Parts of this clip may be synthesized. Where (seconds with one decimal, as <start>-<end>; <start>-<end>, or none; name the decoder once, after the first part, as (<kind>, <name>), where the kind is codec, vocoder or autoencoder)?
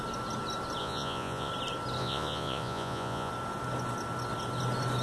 0.8-1.5 (vocoder, Vocos); 2.0-3.3